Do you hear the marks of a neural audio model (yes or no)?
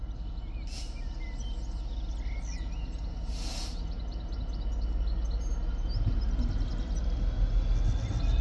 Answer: no